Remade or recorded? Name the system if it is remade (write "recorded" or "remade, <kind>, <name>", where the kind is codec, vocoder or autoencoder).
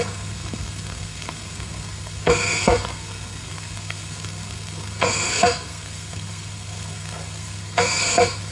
remade, codec, SNAC